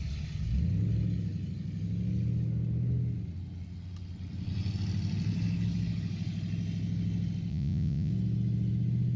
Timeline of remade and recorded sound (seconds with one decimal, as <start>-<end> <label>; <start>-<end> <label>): 0.0-7.5 recorded; 7.5-8.1 remade; 8.1-9.2 recorded